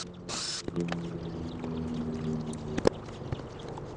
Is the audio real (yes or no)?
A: yes